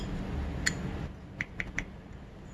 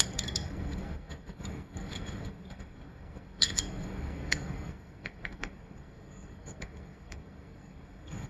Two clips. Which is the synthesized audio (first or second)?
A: second